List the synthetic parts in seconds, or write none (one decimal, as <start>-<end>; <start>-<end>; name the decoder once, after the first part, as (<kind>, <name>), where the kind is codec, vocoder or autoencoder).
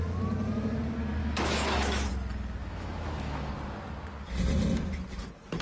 1.2-2.1 (autoencoder, DAC-VAE); 2.6-3.5